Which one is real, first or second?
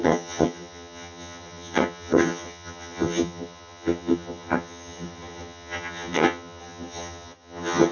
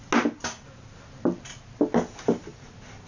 second